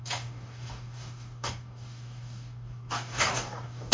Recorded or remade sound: remade